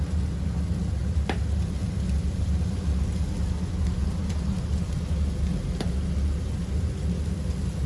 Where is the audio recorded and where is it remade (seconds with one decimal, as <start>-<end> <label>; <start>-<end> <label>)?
0.0-7.9 recorded